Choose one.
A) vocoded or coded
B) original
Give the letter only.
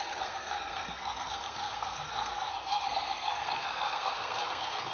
A